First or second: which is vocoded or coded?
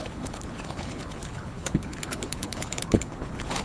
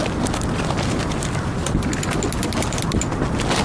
first